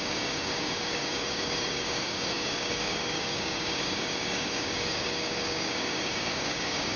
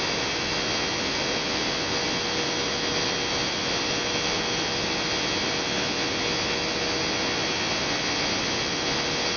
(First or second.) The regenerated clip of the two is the first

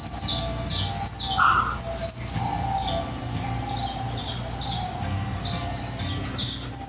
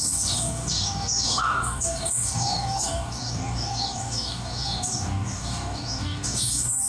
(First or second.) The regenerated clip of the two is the second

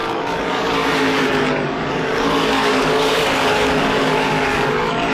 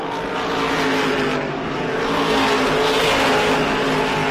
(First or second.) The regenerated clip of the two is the first